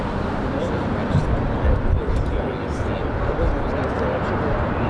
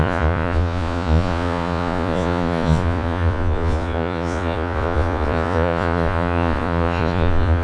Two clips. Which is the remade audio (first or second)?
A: second